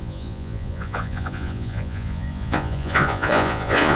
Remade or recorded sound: remade